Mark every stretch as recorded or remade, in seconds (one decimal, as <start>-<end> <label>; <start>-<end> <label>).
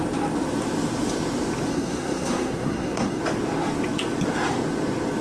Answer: 0.0-1.7 recorded; 1.7-3.2 remade; 3.2-5.2 recorded